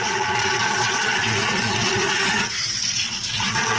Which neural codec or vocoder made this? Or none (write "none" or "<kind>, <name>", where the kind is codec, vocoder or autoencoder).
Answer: vocoder, Vocos